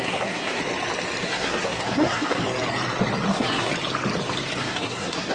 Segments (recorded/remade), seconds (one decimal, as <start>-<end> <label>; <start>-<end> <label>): 0.0-0.6 remade; 0.6-1.2 recorded; 1.2-2.4 remade; 2.4-3.3 recorded; 3.3-3.7 remade; 3.7-4.6 recorded; 4.6-5.3 remade